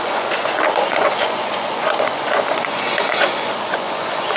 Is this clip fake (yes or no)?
yes